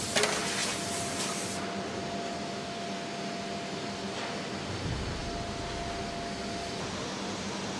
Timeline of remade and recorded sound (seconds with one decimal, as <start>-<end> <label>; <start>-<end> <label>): 0.0-7.8 recorded